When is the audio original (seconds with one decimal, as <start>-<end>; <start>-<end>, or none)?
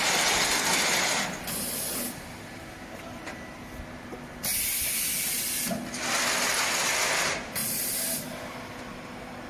0.0-4.5; 5.5-9.5